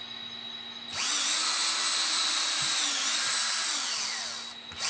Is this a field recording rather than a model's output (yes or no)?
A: yes